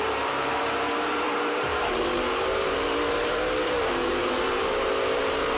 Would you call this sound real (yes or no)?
no